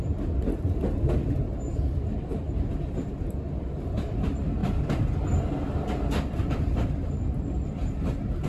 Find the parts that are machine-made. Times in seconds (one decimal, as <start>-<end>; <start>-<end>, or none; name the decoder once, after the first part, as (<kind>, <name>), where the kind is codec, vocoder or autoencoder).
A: 0.0-4.6 (vocoder, BigVGAN v2); 6.3-7.8

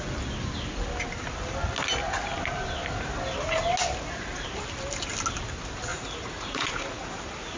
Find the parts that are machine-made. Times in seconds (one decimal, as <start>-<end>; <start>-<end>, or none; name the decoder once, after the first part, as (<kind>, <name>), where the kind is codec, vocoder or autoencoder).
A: 5.9-7.1 (vocoder, Vocos)

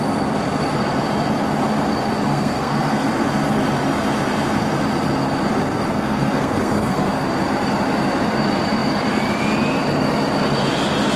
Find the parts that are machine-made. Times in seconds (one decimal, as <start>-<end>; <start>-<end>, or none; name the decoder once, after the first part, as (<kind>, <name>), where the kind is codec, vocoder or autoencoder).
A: 2.3-3.1 (codec, SNAC); 5.9-7.1

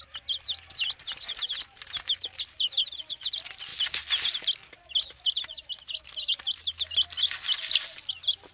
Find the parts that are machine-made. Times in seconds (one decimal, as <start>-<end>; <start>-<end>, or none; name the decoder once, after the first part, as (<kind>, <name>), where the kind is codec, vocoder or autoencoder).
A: 0.0-3.7 (vocoder, BigVGAN v2); 8.1-8.5